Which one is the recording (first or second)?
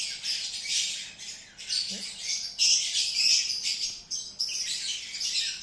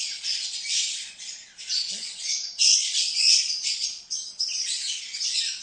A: first